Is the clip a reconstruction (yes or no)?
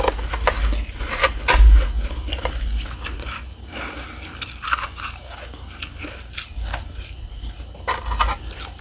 no